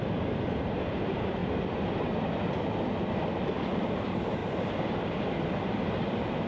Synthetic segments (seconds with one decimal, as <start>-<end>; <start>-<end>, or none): 0.0-4.4; 5.3-6.5